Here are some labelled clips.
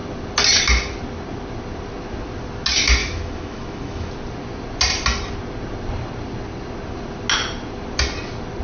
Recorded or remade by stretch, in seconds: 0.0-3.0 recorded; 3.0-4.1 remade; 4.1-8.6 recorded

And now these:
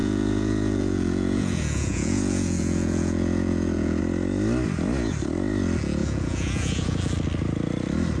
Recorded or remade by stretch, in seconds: 0.0-4.0 remade; 4.0-6.0 recorded; 6.0-7.0 remade; 7.0-8.2 recorded

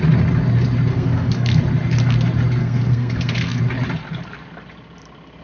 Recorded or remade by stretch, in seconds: 0.0-0.9 recorded; 0.9-1.6 remade; 1.6-2.6 recorded; 2.6-3.6 remade; 3.6-5.4 recorded

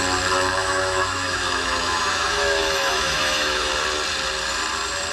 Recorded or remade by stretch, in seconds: 0.0-0.6 recorded; 0.6-3.7 remade; 3.7-5.1 recorded

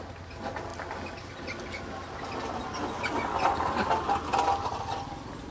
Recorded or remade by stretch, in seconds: 0.0-5.5 recorded

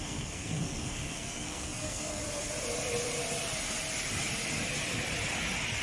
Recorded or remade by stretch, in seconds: 0.0-2.2 remade; 2.2-5.8 recorded